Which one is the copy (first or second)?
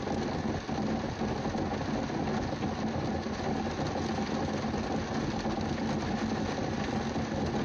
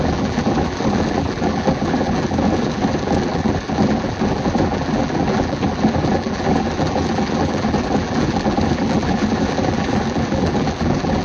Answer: second